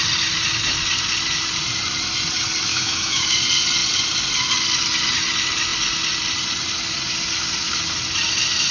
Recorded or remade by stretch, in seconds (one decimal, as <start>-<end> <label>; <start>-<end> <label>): 0.0-2.7 recorded; 2.7-3.3 remade; 3.3-8.7 recorded